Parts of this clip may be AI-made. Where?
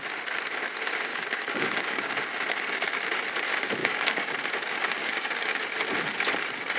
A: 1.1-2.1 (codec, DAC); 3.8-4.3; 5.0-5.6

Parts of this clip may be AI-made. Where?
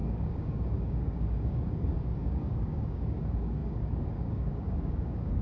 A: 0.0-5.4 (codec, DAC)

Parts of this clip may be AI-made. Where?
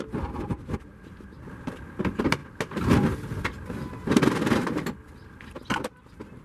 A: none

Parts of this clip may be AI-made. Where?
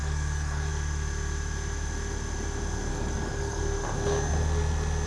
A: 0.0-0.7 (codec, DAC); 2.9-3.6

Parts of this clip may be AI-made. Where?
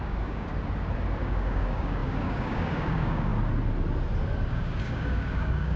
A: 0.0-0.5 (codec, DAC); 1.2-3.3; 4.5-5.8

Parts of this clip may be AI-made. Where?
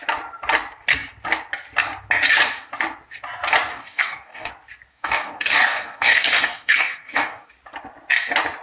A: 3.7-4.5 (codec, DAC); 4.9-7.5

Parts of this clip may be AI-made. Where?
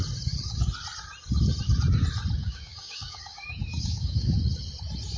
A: 2.4-4.4 (codec, DAC)